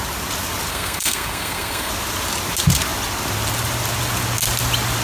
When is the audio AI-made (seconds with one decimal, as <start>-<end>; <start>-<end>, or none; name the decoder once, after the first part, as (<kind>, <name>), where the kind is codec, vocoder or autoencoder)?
0.7-1.9 (codec, SNAC)